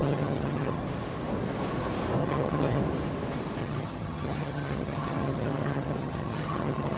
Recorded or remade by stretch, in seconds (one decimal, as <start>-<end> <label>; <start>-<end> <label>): 0.0-0.8 remade; 0.8-2.2 recorded; 2.2-2.8 remade; 2.8-3.6 recorded; 3.6-7.0 remade